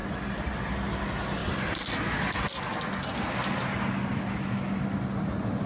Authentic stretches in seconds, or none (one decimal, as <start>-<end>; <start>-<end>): 0.0-5.7